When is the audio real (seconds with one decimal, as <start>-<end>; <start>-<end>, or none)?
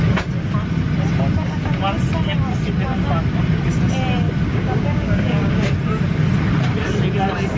0.0-4.5; 5.5-7.6